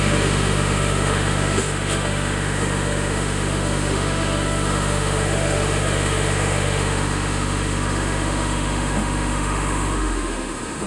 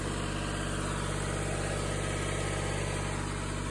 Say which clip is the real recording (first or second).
second